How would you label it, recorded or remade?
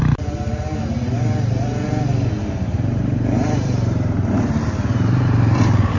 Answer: remade